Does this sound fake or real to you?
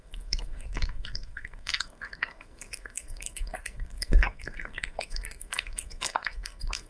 fake